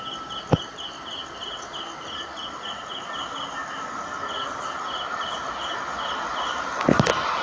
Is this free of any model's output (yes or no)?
yes